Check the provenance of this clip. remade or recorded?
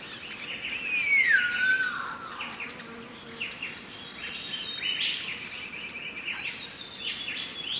recorded